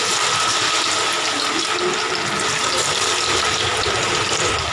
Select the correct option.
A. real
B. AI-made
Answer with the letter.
A